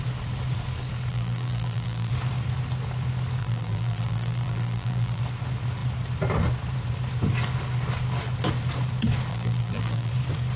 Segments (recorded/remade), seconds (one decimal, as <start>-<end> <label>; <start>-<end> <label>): 0.0-1.1 recorded; 1.1-2.1 remade; 2.1-3.4 recorded; 3.4-5.2 remade; 5.2-9.3 recorded; 9.3-10.1 remade; 10.1-10.6 recorded